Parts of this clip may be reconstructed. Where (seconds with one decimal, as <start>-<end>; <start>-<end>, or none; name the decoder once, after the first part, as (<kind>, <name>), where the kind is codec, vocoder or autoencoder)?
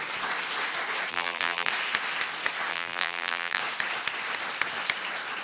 1.1-1.7 (vocoder, BigVGAN v2); 2.7-3.6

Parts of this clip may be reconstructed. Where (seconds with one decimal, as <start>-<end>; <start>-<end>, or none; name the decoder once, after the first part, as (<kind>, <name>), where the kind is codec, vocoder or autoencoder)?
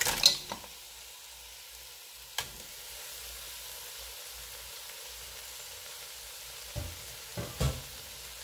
none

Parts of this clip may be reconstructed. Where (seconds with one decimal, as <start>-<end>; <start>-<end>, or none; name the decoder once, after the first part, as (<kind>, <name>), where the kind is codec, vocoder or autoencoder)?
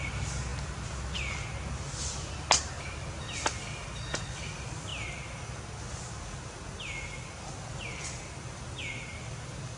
none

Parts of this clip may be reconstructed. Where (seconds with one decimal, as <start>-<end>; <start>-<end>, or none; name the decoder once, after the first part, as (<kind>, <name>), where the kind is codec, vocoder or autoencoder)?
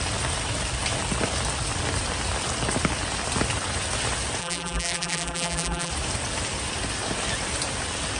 4.4-5.9 (vocoder, BigVGAN v2)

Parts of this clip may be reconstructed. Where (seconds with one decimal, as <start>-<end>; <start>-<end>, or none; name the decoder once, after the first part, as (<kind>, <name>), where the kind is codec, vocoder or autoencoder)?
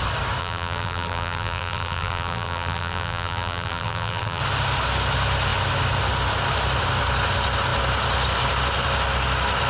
0.4-4.4 (vocoder, BigVGAN v2)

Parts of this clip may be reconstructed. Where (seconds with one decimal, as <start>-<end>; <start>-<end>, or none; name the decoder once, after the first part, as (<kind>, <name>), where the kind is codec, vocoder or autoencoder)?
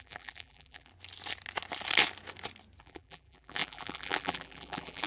0.0-0.9 (vocoder, BigVGAN v2); 2.8-5.1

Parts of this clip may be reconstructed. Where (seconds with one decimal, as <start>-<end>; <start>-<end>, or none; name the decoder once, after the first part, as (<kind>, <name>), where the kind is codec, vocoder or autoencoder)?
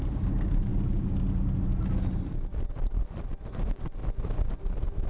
0.0-0.7 (vocoder, BigVGAN v2); 3.0-4.0; 4.5-5.1